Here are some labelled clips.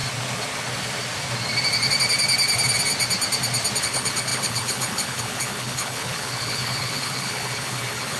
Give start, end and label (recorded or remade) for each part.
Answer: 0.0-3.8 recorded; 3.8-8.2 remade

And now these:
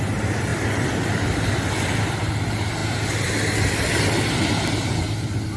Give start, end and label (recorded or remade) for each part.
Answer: 0.0-5.6 recorded

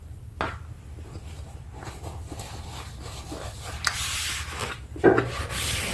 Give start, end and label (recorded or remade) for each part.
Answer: 0.0-5.9 recorded